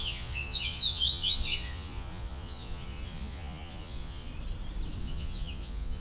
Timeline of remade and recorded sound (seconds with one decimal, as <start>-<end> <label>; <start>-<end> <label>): 0.0-4.3 remade; 4.3-5.0 recorded; 5.0-6.0 remade